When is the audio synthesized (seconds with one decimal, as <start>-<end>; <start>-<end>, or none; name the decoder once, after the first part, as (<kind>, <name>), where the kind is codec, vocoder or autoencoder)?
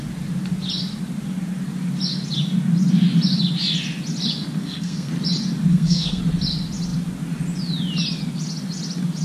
4.6-5.1 (codec, SNAC); 5.7-6.2